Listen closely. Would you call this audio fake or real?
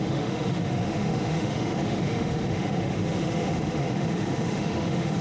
fake